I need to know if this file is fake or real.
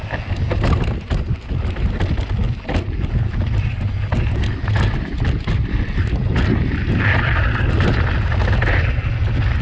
real